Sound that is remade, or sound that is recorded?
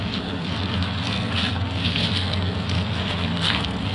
remade